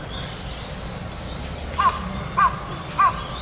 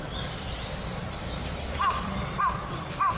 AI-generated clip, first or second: second